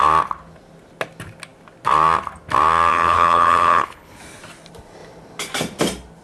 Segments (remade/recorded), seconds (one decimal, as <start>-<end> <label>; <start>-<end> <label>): 0.0-2.9 recorded; 2.9-4.2 remade; 4.2-6.2 recorded